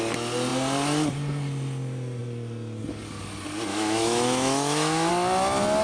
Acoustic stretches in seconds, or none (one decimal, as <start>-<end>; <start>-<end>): 0.0-3.7; 5.1-5.8